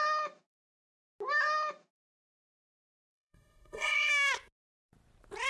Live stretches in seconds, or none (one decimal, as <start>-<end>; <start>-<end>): 0.0-2.7; 4.1-5.5